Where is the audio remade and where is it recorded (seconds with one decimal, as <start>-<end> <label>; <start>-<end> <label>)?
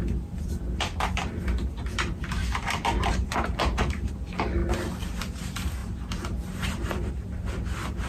0.0-2.4 recorded; 2.4-4.1 remade; 4.1-5.8 recorded; 5.8-7.1 remade; 7.1-8.1 recorded